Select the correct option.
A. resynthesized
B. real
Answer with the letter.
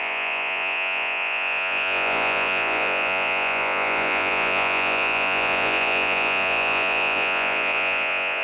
A